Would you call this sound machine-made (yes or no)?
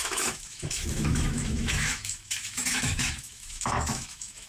yes